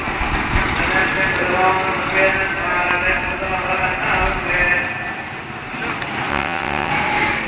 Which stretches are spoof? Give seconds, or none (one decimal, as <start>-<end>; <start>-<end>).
6.3-6.9